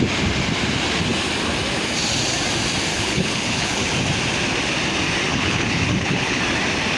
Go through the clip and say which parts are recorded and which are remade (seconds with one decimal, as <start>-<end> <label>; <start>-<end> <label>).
0.0-2.9 recorded; 2.9-3.9 remade; 3.9-5.3 recorded; 5.3-6.4 remade; 6.4-7.0 recorded